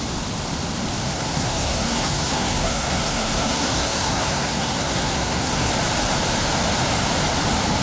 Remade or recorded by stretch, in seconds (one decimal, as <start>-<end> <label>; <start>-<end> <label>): 0.0-1.0 recorded; 1.0-5.7 remade; 5.7-7.8 recorded